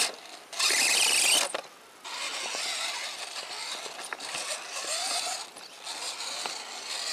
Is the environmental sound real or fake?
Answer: real